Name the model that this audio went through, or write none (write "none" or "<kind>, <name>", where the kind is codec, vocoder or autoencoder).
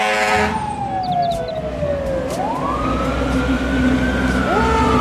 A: none